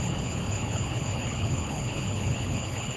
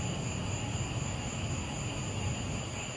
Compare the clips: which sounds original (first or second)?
second